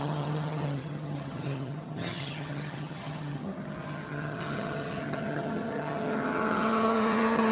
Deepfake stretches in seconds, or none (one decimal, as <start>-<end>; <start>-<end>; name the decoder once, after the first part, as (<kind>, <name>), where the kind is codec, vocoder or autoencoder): 0.0-7.5 (vocoder, HiFi-GAN)